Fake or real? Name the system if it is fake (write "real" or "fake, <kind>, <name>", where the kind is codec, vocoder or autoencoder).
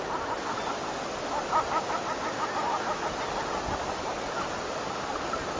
real